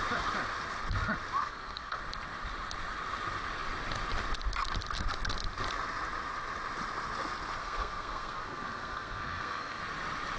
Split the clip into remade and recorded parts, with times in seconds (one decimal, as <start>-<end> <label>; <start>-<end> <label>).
0.0-1.4 recorded; 1.4-2.0 remade; 2.0-7.6 recorded; 7.6-9.8 remade; 9.8-10.4 recorded